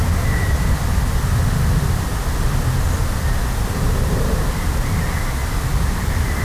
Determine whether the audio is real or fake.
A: real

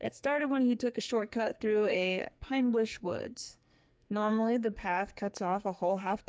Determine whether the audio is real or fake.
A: fake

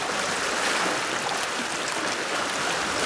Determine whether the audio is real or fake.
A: real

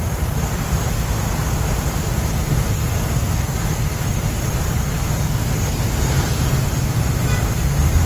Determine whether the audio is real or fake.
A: real